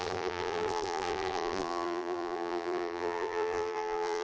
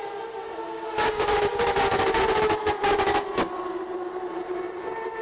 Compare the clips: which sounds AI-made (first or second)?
first